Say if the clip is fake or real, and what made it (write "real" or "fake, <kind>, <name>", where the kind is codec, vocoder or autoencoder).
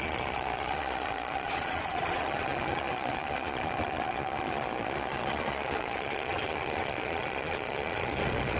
fake, vocoder, Vocos